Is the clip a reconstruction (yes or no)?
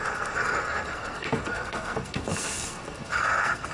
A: yes